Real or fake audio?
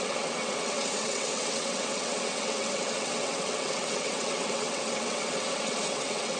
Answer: fake